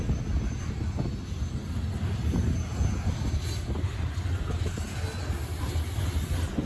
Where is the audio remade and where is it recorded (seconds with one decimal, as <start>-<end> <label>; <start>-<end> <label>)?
0.0-6.7 recorded